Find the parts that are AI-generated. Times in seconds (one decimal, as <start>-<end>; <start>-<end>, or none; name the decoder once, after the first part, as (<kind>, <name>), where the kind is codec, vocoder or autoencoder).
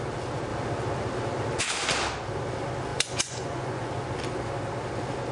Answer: 2.9-3.9 (vocoder, Vocos)